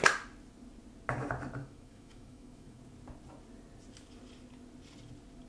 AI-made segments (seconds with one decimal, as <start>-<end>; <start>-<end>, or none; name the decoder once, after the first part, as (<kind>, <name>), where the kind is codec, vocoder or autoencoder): 1.6-2.8 (autoencoder, DAC-VAE)